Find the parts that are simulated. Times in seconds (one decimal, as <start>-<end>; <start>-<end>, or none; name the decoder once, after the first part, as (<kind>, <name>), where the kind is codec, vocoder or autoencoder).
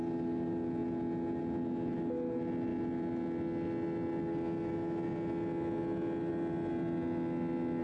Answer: none